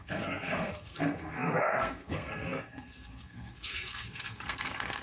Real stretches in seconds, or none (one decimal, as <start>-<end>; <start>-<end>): none